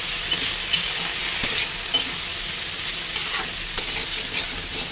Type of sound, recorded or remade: recorded